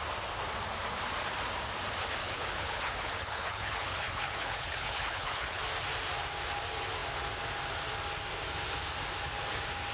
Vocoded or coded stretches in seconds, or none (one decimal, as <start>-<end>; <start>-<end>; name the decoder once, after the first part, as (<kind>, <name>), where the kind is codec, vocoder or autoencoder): 2.2-5.6 (codec, HILCodec)